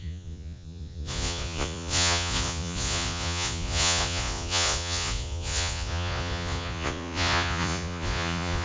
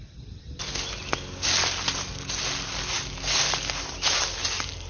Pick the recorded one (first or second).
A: second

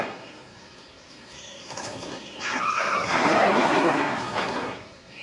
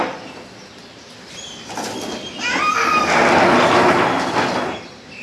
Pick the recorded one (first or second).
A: second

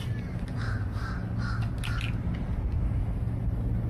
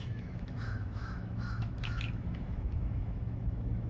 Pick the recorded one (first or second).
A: first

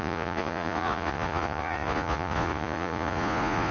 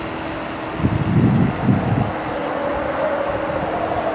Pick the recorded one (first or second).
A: second